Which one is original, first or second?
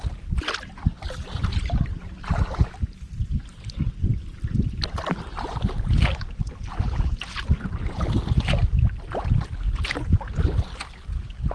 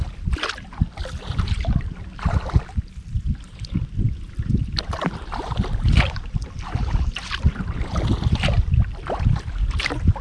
first